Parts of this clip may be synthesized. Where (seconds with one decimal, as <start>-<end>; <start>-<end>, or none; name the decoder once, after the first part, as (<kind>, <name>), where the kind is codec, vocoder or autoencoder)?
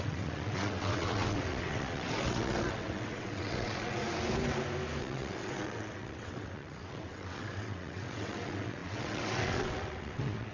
0.0-4.0 (vocoder, WaveNeXt); 5.0-10.5